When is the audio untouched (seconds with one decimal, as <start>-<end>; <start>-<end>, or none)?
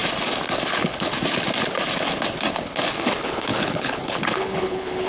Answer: 0.0-0.6; 1.1-2.6